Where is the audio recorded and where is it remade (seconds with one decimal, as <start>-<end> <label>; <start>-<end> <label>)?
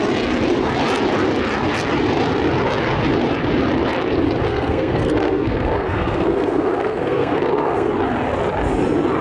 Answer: 0.0-4.5 recorded; 4.5-7.9 remade; 7.9-9.2 recorded